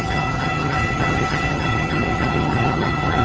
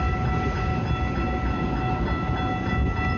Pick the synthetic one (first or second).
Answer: first